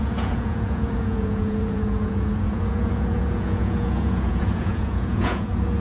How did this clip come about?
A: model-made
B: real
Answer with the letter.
A